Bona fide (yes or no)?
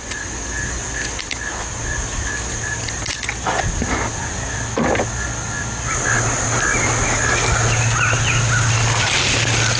yes